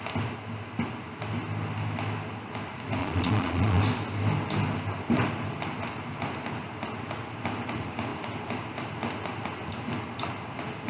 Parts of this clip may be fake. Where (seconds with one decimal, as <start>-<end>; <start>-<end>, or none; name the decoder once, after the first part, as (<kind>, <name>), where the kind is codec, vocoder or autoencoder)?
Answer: 3.0-3.8 (vocoder, Vocos)